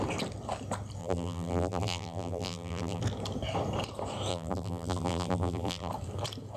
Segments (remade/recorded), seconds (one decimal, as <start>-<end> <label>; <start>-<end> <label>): 0.0-1.0 recorded; 1.0-3.0 remade; 3.0-4.3 recorded; 4.3-5.9 remade; 5.9-6.6 recorded